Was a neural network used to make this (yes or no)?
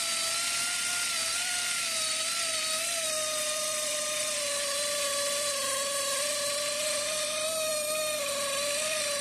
yes